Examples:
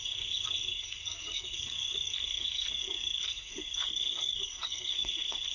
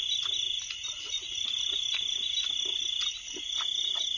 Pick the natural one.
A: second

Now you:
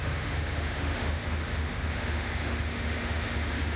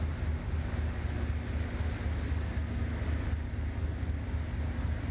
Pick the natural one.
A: second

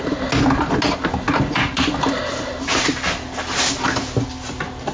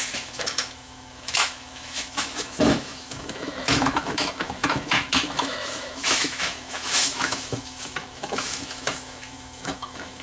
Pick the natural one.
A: first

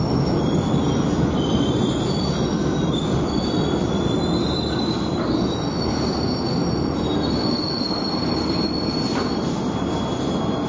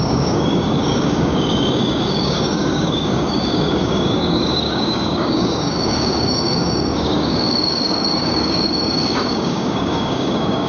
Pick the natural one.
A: first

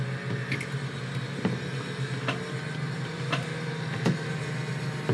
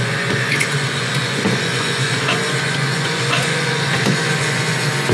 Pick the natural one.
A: first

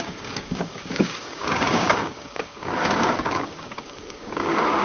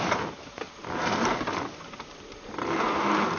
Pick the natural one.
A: second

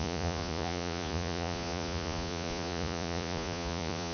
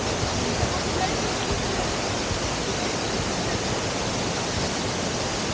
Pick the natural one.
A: second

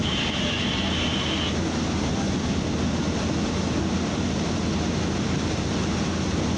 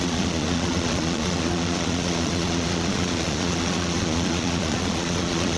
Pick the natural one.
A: first